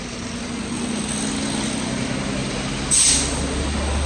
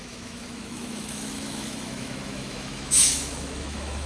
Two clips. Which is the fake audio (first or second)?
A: second